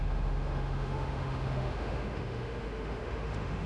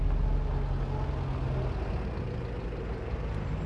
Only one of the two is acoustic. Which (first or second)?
second